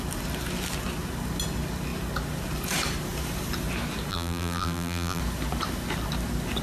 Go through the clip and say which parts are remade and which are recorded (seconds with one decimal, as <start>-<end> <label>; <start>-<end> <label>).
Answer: 0.0-4.1 recorded; 4.1-5.2 remade; 5.2-6.6 recorded